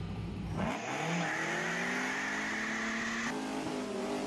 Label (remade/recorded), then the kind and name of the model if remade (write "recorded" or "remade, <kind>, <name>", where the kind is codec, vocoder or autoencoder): recorded